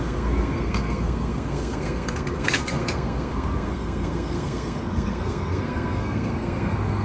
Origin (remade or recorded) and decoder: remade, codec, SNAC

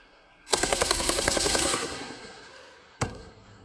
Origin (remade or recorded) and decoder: remade, codec, SNAC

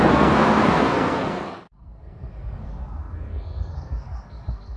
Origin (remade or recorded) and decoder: remade, codec, SNAC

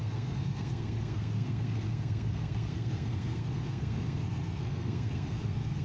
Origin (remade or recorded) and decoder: remade, codec, SNAC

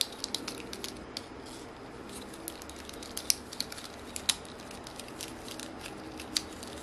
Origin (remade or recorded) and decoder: recorded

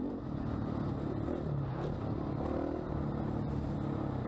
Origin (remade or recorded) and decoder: recorded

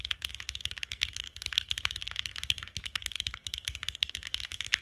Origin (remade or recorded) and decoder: remade, codec, SNAC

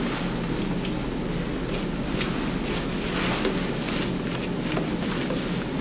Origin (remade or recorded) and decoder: recorded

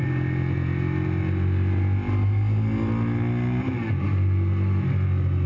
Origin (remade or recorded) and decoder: recorded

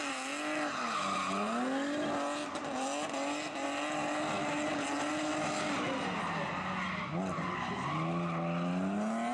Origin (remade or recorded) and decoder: recorded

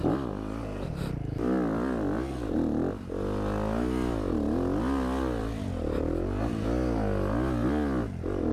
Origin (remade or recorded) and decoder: recorded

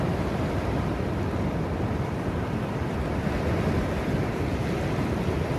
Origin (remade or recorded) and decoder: recorded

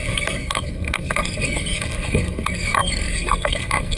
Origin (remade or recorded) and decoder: remade, codec, SNAC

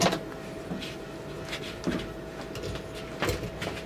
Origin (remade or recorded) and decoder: recorded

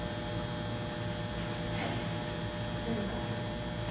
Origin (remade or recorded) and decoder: recorded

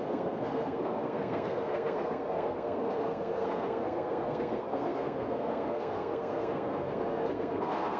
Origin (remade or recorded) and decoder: remade, codec, SNAC